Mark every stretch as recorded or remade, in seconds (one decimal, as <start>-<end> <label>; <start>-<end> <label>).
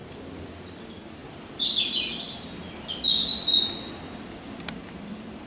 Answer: 0.0-1.2 recorded; 1.2-1.8 remade; 1.8-3.2 recorded; 3.2-3.7 remade; 3.7-5.5 recorded